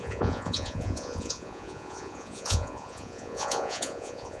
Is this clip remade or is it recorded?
remade